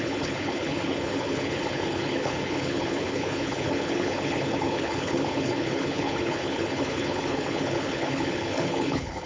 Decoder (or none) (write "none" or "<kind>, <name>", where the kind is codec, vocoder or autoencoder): codec, HILCodec